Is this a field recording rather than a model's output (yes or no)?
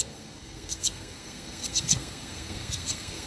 no